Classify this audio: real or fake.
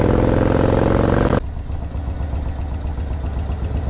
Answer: real